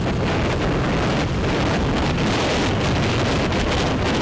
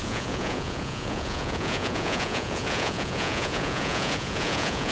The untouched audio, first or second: first